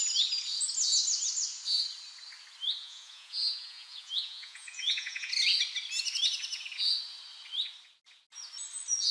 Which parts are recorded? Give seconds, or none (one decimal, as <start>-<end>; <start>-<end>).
0.0-2.8; 5.3-9.1